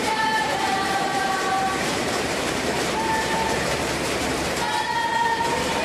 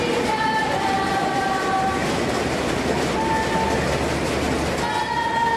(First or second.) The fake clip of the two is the first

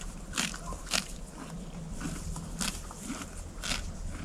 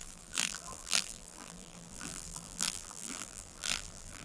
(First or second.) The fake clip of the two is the second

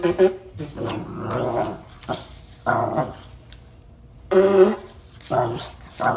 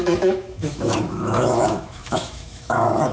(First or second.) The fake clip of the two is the second